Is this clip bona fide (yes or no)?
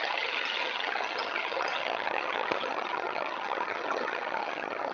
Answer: no